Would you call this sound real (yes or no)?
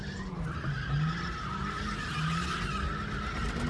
yes